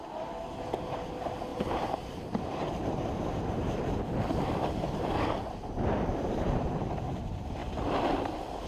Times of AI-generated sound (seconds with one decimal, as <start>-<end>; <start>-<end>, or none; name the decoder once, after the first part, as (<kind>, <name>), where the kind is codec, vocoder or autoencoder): 1.5-4.0 (vocoder, BigVGAN v2); 6.1-7.0